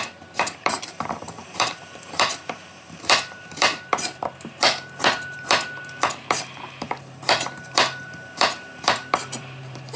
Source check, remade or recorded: remade